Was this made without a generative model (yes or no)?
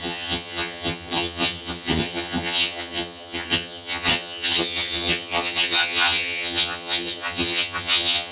no